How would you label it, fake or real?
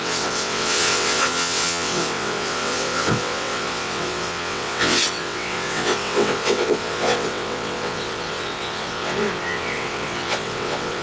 fake